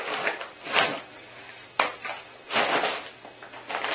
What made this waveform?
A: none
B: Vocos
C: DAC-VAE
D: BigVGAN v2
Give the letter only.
A